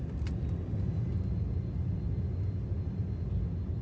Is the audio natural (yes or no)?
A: yes